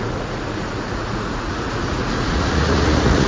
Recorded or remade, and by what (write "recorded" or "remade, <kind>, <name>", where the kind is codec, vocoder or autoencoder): remade, vocoder, Vocos